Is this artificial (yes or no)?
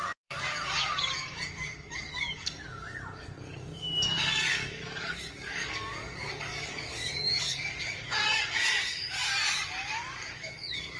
yes